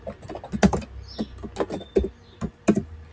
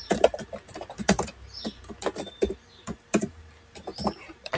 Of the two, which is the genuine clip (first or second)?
first